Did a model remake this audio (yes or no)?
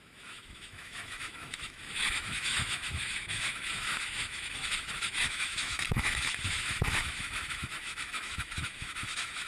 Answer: yes